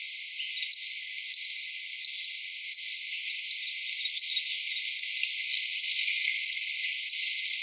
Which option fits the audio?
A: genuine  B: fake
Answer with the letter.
A